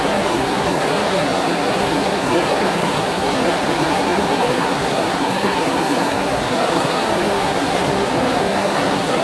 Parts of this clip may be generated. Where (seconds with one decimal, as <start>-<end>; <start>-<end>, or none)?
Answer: 0.0-9.2